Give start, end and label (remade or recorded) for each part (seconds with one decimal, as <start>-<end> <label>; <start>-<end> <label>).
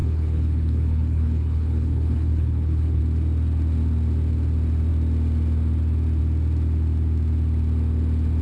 0.0-3.0 remade; 3.0-8.4 recorded